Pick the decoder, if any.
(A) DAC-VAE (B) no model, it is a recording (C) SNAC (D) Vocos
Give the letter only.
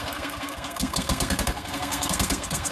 C